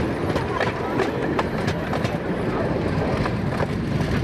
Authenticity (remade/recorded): recorded